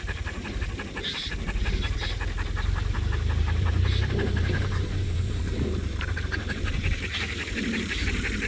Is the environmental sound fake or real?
fake